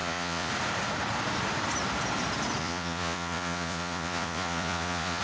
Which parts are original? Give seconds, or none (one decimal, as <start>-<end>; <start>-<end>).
0.5-2.6